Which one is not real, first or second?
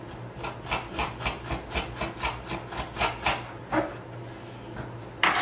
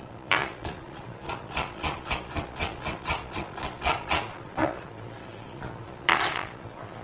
second